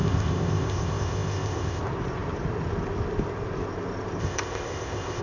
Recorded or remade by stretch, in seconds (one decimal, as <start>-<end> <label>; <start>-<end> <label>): 0.0-1.8 remade; 1.8-4.2 recorded; 4.2-5.2 remade